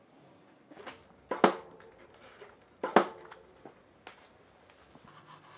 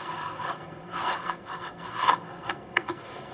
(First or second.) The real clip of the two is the first